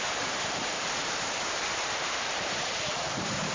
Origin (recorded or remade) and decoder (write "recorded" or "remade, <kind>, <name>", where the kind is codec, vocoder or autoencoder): remade, vocoder, BigVGAN v2